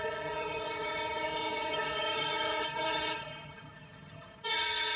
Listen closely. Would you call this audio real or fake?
fake